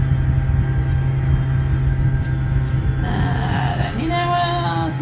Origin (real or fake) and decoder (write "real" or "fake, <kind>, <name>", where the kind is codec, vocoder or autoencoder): real